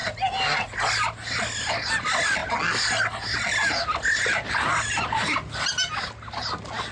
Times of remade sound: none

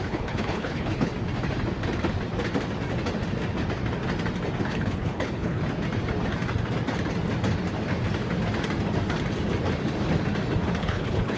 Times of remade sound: 0.0-1.1 (codec, HILCodec); 4.6-5.6; 10.8-11.4

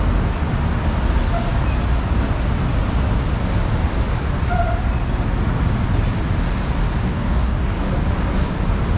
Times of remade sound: 7.1-7.9 (codec, DAC)